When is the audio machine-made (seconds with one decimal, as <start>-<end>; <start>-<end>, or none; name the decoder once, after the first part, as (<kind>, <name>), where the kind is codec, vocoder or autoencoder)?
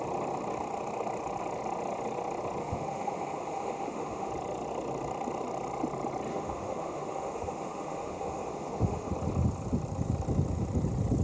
2.6-4.3 (autoencoder, DAC-VAE); 6.3-9.1